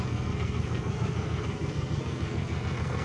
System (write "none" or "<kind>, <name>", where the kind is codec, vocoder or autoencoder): codec, SNAC